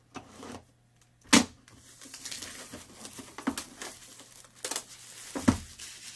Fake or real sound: real